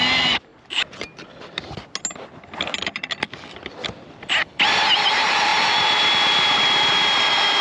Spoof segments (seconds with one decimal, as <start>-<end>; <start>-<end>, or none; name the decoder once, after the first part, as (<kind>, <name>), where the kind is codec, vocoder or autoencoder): 4.5-5.1 (vocoder, BigVGAN v2); 5.5-7.6